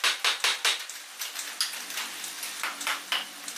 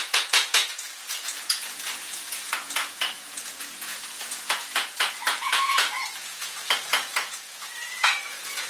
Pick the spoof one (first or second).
second